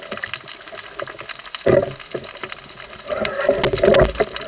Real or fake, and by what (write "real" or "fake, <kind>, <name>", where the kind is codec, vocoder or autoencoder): real